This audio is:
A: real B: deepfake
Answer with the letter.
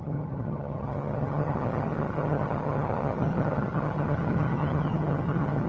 B